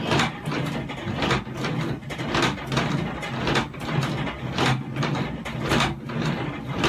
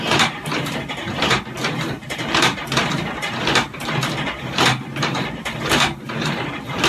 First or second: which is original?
first